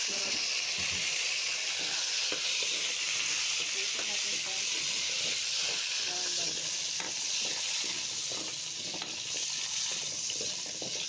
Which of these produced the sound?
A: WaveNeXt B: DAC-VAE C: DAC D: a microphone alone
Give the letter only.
D